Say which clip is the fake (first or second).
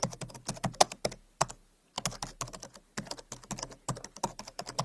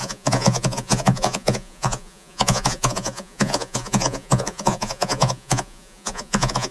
second